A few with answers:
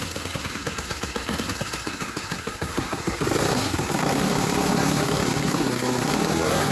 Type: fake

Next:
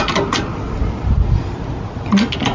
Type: real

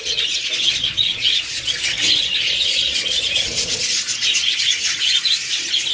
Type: fake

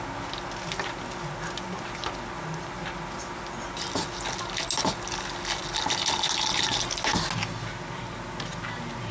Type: real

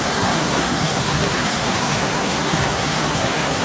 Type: fake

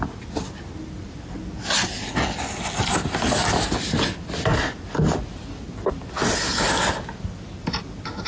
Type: real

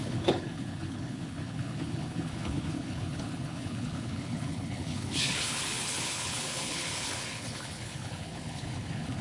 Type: fake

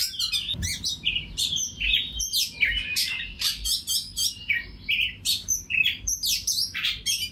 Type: fake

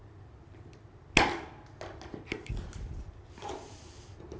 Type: real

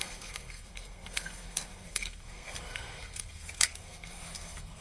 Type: fake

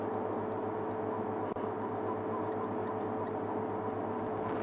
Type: real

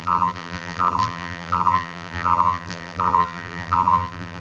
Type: fake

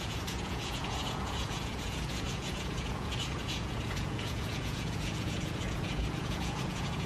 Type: fake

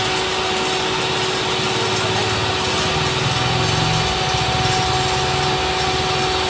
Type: real